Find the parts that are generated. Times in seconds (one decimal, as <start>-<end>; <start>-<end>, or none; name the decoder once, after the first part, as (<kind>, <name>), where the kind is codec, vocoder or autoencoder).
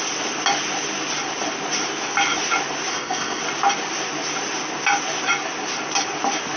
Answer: 2.9-3.4 (codec, ZipCodec)